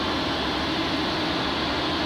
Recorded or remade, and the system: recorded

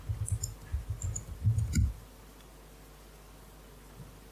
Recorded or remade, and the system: recorded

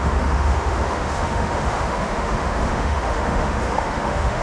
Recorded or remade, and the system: remade, autoencoder, DAC-VAE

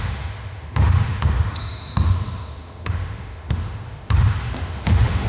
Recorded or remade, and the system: remade, autoencoder, DAC-VAE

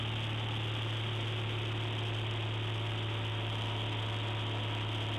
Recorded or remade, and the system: recorded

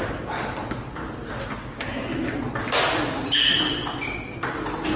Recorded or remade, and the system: recorded